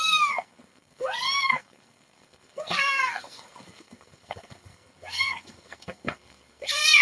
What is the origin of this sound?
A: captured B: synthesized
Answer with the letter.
B